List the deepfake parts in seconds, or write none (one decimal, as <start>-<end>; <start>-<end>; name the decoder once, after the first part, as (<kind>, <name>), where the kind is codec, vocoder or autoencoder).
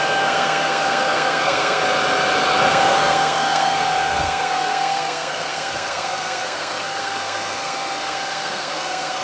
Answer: 0.0-1.8 (codec, SNAC); 2.7-9.2